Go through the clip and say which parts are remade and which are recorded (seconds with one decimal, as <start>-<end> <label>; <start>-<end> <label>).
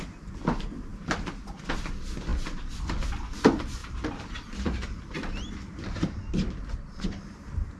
0.0-7.8 remade